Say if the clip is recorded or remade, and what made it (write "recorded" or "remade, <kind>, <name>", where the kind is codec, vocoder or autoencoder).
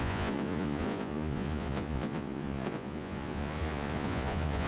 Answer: remade, vocoder, Vocos